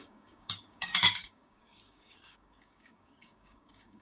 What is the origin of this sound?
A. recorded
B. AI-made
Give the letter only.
B